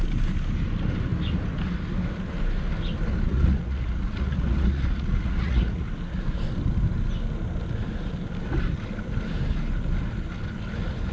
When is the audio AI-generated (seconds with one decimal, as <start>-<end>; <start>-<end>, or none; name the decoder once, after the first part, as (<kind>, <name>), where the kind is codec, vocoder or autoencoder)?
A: 3.3-5.9 (vocoder, Vocos)